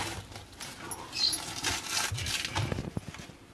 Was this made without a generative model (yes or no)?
yes